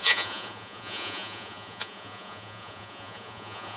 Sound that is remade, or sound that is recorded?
remade